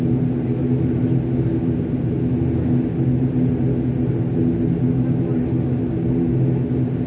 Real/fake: real